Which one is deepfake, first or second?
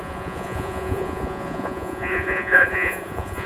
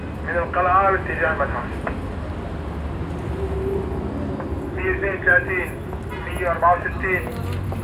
first